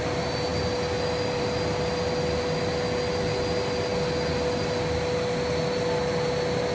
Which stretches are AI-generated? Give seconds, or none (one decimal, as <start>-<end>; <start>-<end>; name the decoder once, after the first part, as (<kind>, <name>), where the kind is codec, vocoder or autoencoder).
none